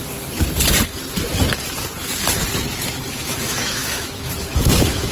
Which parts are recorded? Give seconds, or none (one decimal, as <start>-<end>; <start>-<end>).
0.0-3.1